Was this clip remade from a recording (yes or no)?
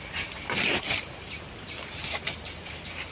no